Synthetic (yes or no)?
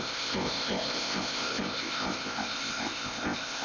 yes